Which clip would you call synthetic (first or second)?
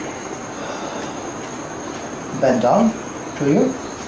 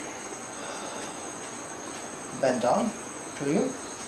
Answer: second